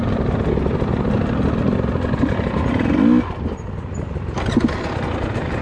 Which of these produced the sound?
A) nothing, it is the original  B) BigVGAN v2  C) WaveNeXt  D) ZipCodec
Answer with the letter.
A